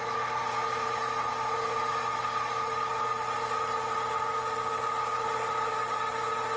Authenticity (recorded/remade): recorded